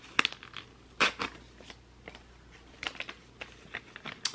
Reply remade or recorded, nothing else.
recorded